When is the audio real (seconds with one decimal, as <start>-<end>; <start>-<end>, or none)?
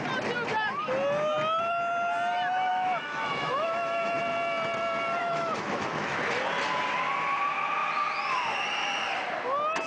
0.0-2.7; 4.2-5.2; 6.2-9.9